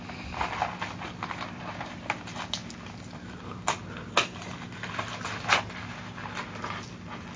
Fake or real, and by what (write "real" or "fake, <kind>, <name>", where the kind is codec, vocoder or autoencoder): real